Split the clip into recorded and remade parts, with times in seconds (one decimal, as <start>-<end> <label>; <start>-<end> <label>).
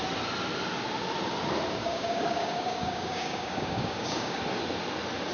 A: 0.0-1.8 recorded; 1.8-4.4 remade; 4.4-5.3 recorded